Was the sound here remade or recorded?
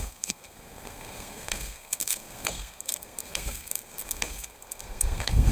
remade